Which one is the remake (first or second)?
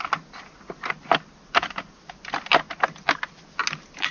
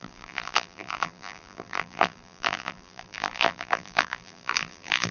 second